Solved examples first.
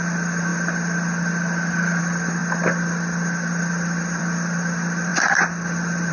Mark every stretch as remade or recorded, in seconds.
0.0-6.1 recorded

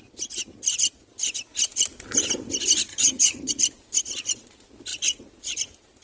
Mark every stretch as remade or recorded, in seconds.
0.0-2.9 recorded; 2.9-3.5 remade; 3.5-6.0 recorded

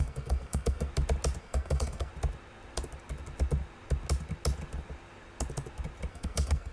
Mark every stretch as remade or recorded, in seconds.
0.0-0.9 remade; 0.9-1.4 recorded; 1.4-2.1 remade; 2.1-6.1 recorded; 6.1-6.7 remade

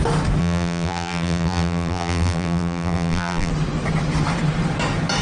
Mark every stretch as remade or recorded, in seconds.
0.0-0.4 recorded; 0.4-3.5 remade; 3.5-5.2 recorded

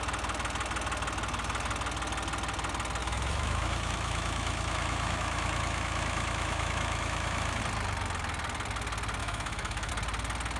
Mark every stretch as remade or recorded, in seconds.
0.0-3.0 recorded; 3.0-7.6 remade; 7.6-9.2 recorded; 9.2-9.9 remade; 9.9-10.6 recorded